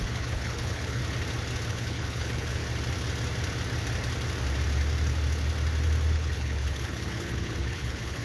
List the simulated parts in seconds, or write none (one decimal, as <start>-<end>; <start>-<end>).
0.0-1.0; 1.7-2.6; 6.1-8.2